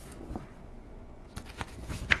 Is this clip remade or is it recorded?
remade